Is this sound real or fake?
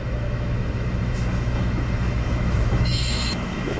fake